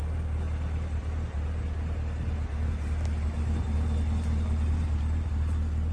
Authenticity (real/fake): real